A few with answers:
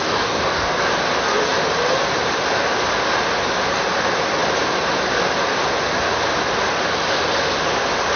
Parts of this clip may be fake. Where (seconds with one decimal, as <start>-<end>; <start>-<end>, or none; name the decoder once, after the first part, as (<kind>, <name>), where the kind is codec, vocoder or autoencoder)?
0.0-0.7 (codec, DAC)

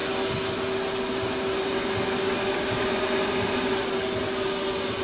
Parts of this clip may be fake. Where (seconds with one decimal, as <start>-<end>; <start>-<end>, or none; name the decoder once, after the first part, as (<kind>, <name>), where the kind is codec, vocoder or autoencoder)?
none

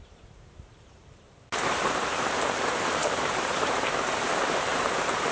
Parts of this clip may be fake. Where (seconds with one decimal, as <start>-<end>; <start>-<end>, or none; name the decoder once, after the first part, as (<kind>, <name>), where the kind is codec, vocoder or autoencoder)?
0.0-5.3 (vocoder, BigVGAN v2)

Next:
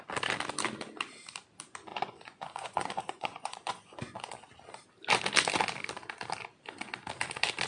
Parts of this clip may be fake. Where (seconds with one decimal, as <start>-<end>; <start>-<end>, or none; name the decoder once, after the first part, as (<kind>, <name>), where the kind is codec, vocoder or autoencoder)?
1.9-4.3 (vocoder, Vocos)

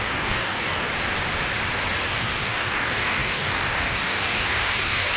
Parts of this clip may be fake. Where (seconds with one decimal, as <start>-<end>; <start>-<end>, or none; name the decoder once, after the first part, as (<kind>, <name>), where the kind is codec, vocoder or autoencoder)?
0.0-0.9 (codec, DAC); 2.1-5.2

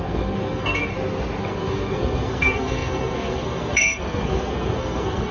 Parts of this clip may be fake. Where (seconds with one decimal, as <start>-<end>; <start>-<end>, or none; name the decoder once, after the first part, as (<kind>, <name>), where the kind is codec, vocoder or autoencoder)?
0.0-0.9 (codec, SNAC); 1.4-5.3